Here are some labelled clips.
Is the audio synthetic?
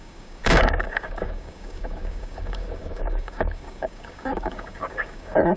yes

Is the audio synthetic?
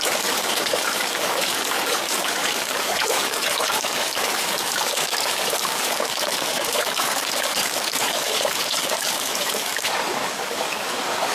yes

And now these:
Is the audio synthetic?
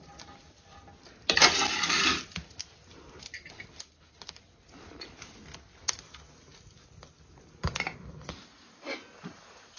no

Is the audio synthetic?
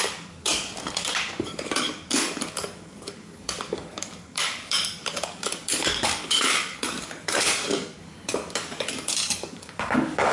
yes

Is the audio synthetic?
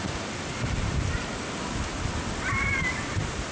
no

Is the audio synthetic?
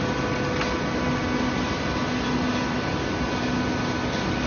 no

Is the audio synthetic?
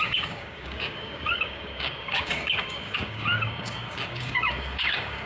yes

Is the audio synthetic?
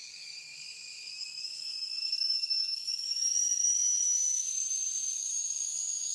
yes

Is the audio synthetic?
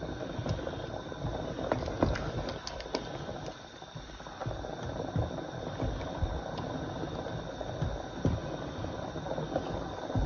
no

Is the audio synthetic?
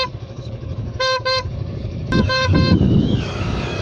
yes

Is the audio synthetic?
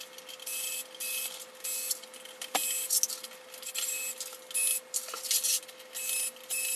no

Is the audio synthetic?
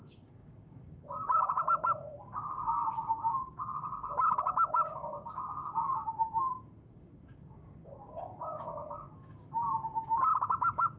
yes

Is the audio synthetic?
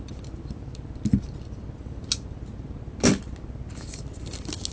no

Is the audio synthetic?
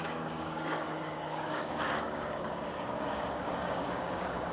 yes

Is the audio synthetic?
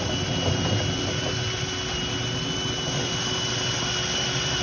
no